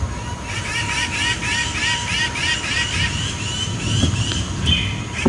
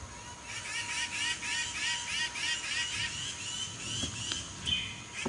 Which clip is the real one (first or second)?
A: second